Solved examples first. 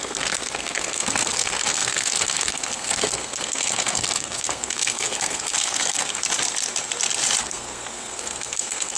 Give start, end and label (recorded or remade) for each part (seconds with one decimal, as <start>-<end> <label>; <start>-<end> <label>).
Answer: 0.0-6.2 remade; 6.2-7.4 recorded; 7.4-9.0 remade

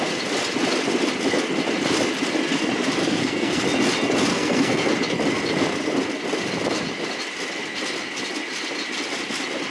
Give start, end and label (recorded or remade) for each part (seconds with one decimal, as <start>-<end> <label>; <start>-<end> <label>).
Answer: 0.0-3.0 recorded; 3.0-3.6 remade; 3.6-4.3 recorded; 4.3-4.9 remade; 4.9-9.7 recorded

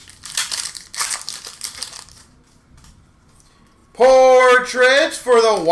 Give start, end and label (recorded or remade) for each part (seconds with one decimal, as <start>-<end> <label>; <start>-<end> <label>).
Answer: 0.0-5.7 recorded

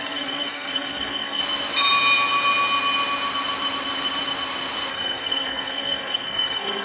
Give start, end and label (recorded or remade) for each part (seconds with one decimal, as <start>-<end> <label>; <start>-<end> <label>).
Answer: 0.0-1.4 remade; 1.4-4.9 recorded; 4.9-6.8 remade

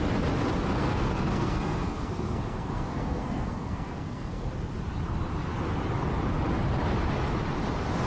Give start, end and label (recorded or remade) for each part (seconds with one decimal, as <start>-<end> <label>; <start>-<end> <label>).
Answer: 0.0-0.7 recorded; 0.7-4.5 remade; 4.5-8.1 recorded

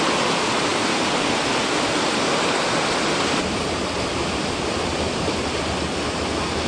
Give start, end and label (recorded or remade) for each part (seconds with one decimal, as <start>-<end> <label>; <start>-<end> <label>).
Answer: 0.0-6.7 recorded